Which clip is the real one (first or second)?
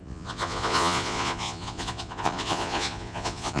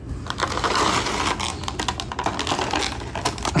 second